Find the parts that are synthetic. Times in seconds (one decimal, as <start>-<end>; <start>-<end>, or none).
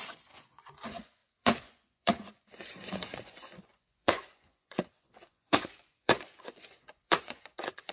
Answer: 0.0-7.9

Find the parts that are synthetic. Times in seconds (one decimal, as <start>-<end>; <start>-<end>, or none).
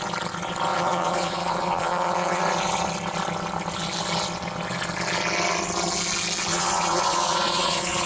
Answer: 0.7-2.4; 6.5-8.1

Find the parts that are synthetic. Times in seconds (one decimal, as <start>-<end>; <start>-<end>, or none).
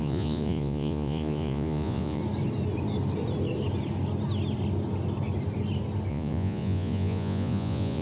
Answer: 0.0-2.2; 6.1-8.0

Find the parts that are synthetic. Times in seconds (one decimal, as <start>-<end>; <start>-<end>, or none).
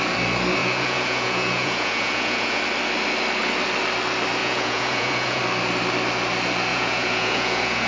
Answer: 0.6-2.6; 4.4-5.4; 6.7-7.9